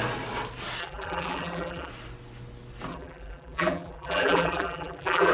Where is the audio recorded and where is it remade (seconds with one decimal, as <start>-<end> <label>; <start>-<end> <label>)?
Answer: 0.0-0.8 recorded; 0.8-1.9 remade; 1.9-2.9 recorded; 2.9-5.3 remade